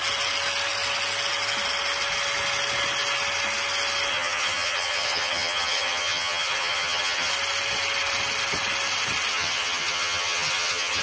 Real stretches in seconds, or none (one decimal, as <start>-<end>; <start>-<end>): 0.0-4.1; 7.3-9.3